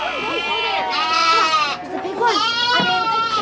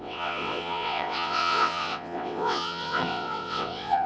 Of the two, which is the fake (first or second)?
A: second